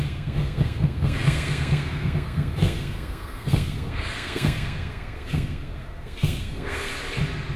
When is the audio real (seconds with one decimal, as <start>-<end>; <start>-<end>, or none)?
6.9-7.6